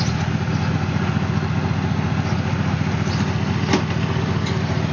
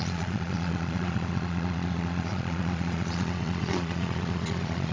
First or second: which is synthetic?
second